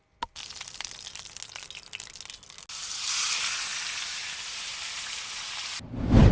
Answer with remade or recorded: recorded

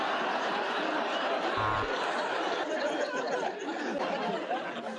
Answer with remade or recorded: recorded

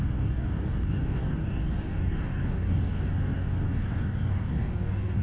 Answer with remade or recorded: remade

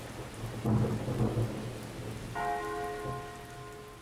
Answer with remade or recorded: recorded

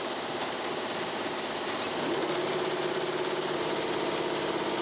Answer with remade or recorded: recorded